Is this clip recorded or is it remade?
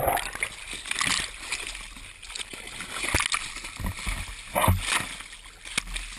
recorded